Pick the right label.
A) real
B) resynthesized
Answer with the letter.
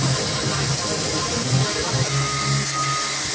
A